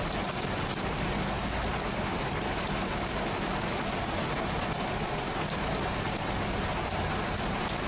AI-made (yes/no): no